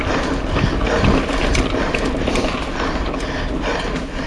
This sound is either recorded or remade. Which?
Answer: recorded